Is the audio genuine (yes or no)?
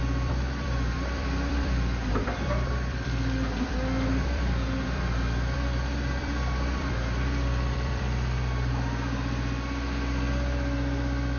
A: no